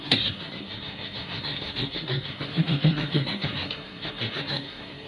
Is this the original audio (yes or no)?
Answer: no